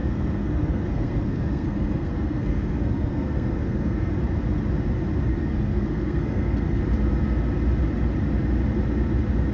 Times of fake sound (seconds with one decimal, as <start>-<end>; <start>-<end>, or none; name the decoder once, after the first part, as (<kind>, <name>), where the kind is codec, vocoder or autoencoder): 0.0-4.1 (codec, SNAC); 5.3-6.8